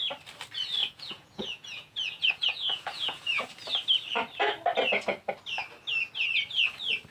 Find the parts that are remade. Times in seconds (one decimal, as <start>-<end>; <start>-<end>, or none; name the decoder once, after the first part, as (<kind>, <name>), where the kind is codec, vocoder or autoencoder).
0.8-3.4 (vocoder, Vocos)